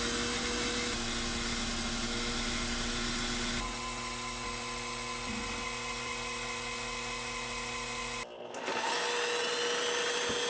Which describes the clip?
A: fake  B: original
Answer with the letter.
B